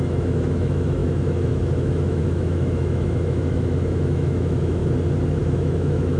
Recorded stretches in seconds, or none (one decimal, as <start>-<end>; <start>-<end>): 4.8-5.4